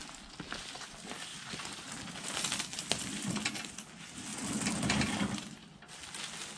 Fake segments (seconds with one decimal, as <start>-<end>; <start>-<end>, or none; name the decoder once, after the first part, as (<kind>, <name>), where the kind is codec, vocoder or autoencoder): none